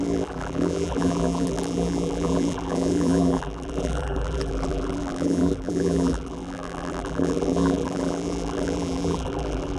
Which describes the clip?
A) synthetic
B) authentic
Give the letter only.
A